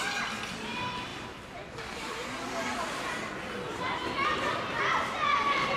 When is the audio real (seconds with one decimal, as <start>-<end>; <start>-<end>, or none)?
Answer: 0.0-1.1; 3.5-5.8